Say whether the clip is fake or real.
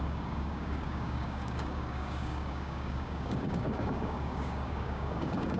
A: fake